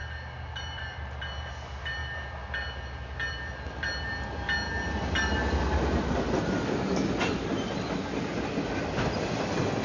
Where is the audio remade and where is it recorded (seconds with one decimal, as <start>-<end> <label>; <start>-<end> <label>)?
0.0-9.8 recorded